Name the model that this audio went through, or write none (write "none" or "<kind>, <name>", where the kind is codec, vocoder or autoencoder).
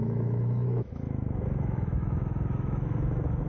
autoencoder, DAC-VAE